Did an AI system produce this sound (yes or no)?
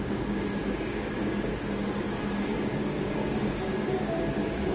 yes